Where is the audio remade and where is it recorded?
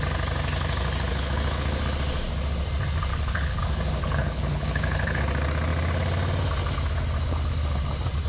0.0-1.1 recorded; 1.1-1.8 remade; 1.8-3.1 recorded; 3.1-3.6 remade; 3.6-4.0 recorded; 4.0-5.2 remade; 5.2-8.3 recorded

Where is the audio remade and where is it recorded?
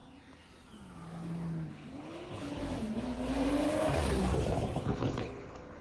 0.0-1.7 recorded; 1.7-2.6 remade; 2.6-4.8 recorded; 4.8-5.8 remade